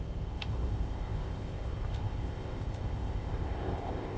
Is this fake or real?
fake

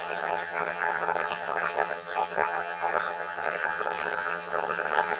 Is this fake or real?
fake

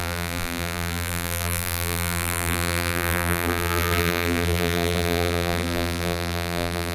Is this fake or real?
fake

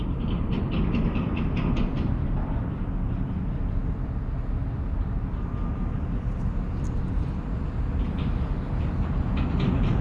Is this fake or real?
real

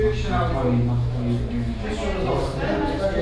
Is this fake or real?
real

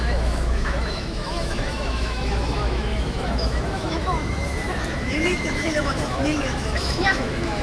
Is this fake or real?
fake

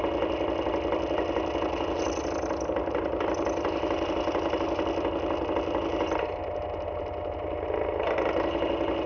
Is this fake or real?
real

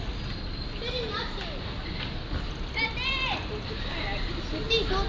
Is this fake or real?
real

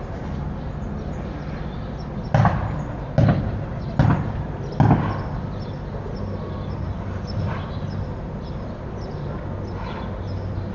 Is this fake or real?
real